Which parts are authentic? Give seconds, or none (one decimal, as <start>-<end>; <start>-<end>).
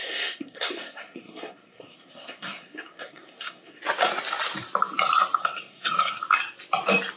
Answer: 3.8-5.4; 6.2-7.2